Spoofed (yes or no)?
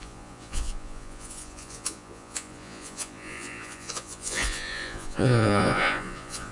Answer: yes